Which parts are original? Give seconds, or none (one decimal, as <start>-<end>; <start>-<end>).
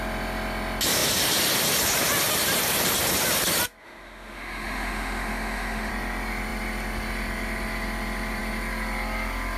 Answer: 0.0-3.8; 5.9-9.6